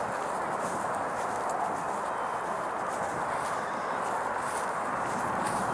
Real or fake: real